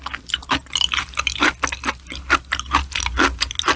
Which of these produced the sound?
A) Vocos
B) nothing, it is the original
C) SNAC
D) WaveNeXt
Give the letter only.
B